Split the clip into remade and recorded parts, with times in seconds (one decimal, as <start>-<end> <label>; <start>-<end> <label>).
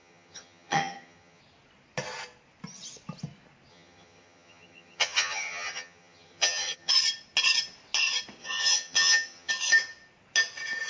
0.0-1.4 remade; 1.4-3.7 recorded; 3.7-6.9 remade; 6.9-8.4 recorded; 8.4-9.5 remade; 9.5-10.9 recorded